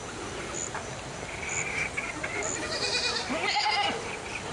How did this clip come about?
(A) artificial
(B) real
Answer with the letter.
B